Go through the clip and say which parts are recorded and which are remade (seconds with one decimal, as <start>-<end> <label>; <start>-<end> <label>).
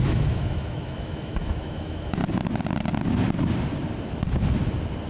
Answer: 0.0-2.2 remade; 2.2-5.1 recorded